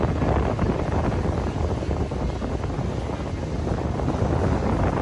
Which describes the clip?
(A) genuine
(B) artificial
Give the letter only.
A